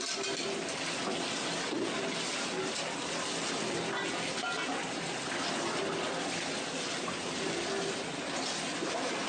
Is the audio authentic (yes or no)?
yes